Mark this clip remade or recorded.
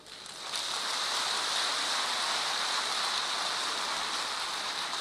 recorded